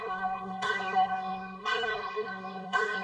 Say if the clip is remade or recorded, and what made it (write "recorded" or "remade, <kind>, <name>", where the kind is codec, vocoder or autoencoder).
remade, codec, SNAC